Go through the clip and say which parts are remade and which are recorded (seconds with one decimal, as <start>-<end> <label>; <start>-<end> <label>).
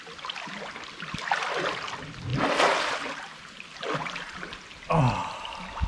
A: 0.0-5.9 recorded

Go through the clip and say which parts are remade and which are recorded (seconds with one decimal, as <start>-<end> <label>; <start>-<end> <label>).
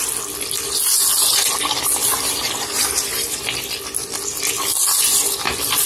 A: 0.0-2.1 recorded; 2.1-3.4 remade; 3.4-5.9 recorded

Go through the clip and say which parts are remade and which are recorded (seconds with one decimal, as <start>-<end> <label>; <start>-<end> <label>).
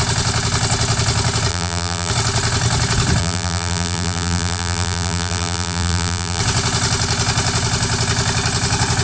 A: 0.0-1.5 recorded; 1.5-2.1 remade; 2.1-3.2 recorded; 3.2-6.4 remade; 6.4-9.0 recorded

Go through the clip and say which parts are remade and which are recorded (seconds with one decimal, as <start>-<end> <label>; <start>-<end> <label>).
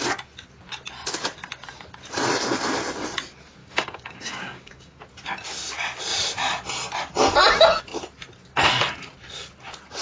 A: 0.0-3.6 recorded; 3.6-5.0 remade; 5.0-10.0 recorded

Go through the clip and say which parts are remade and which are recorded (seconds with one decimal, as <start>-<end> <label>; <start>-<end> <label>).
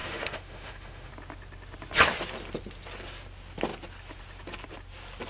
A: 0.0-1.1 remade; 1.1-5.3 recorded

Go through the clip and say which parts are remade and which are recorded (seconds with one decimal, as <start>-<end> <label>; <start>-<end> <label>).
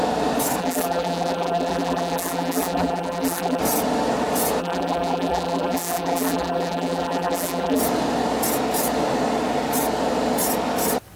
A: 0.0-0.6 recorded; 0.6-3.6 remade; 3.6-4.6 recorded; 4.6-7.8 remade; 7.8-11.2 recorded